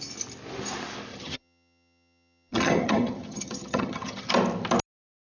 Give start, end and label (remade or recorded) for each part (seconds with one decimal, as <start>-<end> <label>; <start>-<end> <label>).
0.0-1.1 recorded; 1.1-4.3 remade; 4.3-5.3 recorded